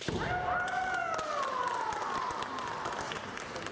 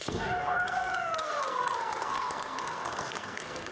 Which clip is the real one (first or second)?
first